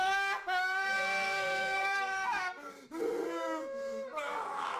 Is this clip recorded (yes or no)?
no